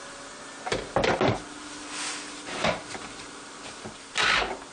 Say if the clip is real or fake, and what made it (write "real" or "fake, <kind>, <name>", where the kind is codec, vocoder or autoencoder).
real